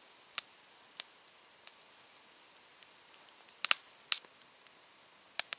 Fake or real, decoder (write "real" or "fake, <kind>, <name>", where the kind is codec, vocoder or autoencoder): real